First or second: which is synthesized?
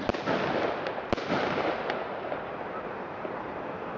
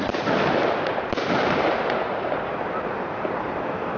second